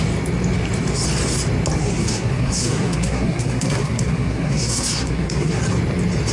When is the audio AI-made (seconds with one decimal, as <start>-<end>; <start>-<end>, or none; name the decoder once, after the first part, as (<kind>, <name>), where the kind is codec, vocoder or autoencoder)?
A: 1.8-5.6 (codec, SNAC)